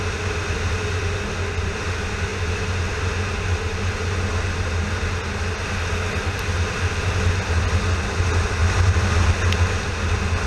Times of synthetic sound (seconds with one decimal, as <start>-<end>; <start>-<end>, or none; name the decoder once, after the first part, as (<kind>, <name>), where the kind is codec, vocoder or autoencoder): none